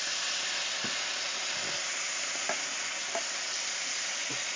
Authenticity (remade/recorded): recorded